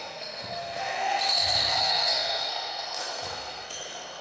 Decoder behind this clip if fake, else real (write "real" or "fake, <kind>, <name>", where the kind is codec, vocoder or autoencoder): fake, codec, SNAC